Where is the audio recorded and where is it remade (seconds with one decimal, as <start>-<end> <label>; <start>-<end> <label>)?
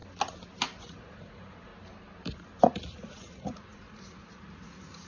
0.0-0.8 recorded; 0.8-1.7 remade; 1.7-2.6 recorded; 2.6-5.1 remade